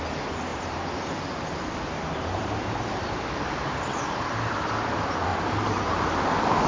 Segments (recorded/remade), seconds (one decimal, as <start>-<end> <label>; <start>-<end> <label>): 0.0-0.5 recorded; 0.5-4.5 remade; 4.5-5.3 recorded; 5.3-5.9 remade; 5.9-6.7 recorded